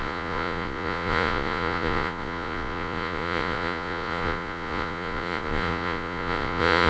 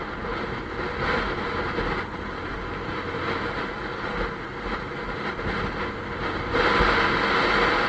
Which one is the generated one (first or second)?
first